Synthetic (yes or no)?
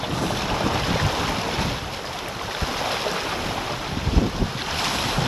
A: no